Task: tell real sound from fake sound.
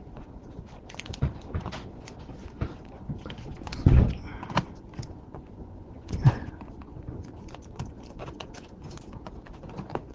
fake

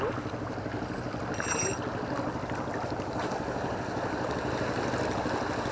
real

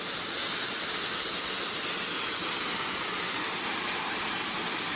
real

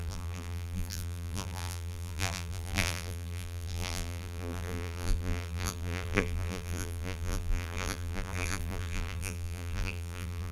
fake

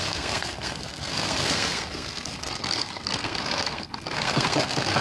fake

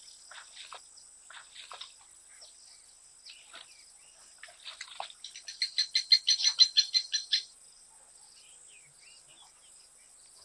real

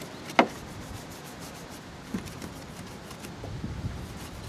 real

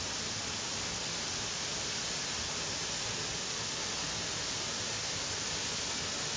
fake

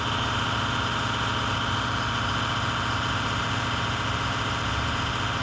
real